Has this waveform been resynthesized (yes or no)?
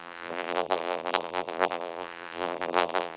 yes